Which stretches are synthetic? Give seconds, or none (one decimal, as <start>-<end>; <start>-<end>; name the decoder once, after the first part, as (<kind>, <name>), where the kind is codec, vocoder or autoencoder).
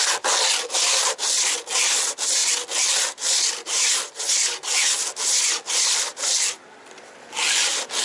none